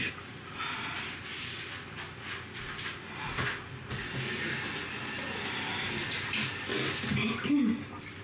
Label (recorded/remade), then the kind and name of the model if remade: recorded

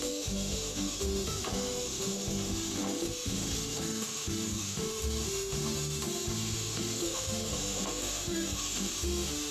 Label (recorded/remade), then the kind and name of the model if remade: remade, autoencoder, DAC-VAE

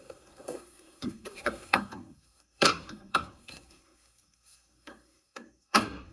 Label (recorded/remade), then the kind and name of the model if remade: remade, codec, SNAC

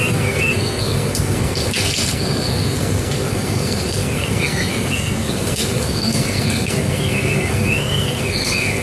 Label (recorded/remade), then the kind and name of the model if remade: remade, codec, SNAC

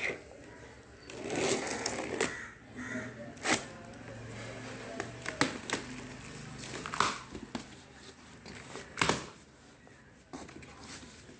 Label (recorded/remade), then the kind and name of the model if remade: recorded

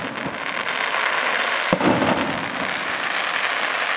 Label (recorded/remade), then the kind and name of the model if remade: recorded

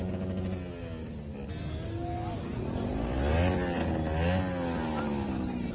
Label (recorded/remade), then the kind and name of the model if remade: recorded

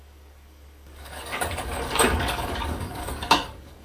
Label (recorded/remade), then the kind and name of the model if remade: remade, codec, DAC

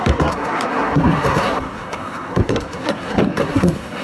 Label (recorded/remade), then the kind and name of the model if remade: remade, codec, SNAC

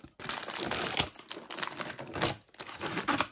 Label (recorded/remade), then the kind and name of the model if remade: recorded